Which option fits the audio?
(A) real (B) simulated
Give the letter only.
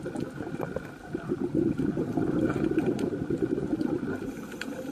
A